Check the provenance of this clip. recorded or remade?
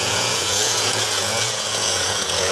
remade